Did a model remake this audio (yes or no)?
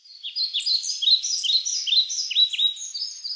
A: no